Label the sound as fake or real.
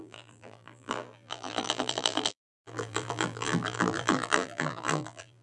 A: fake